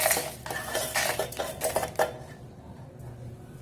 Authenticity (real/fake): real